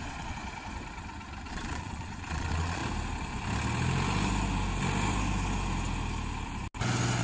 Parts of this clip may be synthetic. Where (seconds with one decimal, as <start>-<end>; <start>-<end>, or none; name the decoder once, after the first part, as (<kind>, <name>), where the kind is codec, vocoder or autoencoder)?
0.0-0.4 (vocoder, Vocos); 1.5-2.8